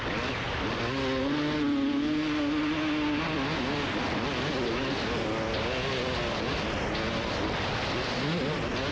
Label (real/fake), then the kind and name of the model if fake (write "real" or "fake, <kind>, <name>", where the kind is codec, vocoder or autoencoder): real